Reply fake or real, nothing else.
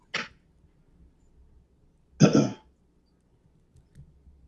real